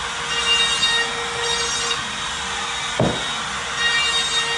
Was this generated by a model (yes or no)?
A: no